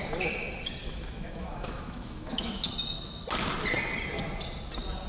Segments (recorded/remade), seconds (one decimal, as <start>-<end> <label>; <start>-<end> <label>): 0.0-0.8 recorded; 0.8-2.7 remade; 2.7-5.1 recorded